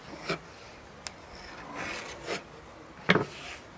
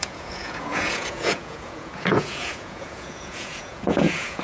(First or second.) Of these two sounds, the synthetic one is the second